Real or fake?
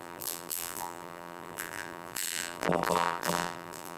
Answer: fake